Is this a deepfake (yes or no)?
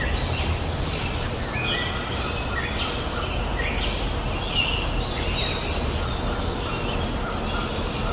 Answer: no